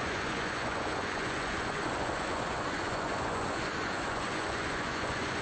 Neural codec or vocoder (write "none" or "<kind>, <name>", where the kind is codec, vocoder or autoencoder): vocoder, Vocos